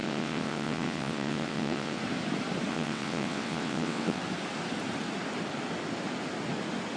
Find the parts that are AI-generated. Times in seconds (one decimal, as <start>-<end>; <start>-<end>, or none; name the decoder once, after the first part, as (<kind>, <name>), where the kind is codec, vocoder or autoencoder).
0.0-2.0 (vocoder, WaveNeXt); 2.7-4.2